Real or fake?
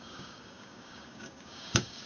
fake